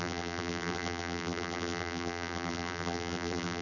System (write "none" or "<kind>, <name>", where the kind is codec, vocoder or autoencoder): vocoder, BigVGAN v2